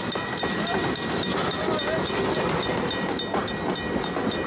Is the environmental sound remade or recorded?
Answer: recorded